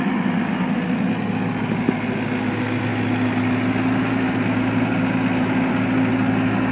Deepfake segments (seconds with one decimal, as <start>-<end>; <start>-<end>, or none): none